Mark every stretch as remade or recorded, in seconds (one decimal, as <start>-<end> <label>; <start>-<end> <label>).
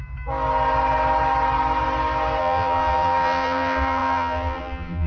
0.0-2.4 recorded; 2.4-5.1 remade